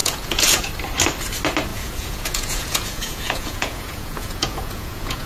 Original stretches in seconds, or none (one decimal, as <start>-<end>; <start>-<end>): 0.7-1.7